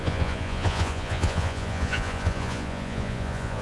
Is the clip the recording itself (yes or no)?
no